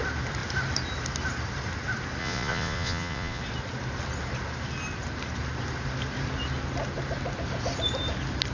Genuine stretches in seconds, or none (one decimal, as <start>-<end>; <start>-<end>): 0.0-2.2; 3.4-8.5